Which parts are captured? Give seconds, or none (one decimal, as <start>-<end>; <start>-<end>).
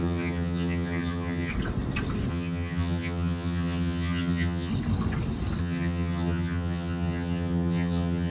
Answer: 1.5-2.3; 4.7-5.6